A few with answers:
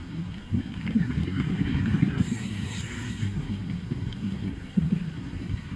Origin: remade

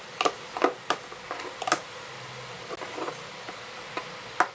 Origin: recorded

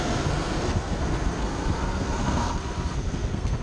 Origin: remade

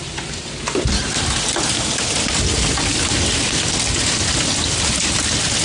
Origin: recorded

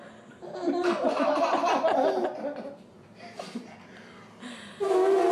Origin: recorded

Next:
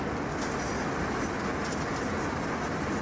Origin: recorded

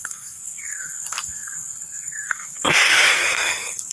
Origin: remade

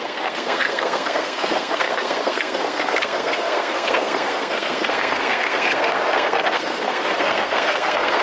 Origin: remade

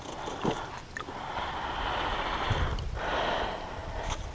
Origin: recorded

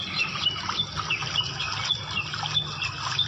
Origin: recorded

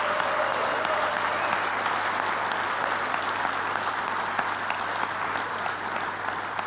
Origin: recorded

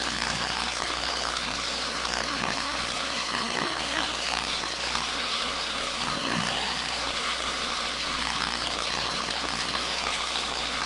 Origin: remade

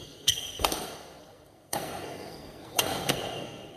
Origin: remade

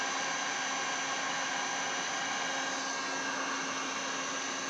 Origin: recorded